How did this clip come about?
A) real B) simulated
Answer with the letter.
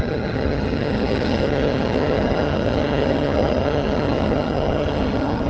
B